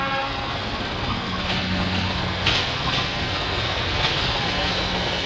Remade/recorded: remade